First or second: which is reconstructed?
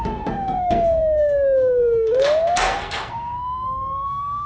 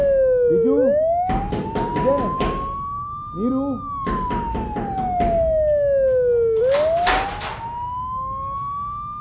first